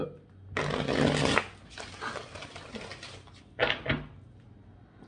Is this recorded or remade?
recorded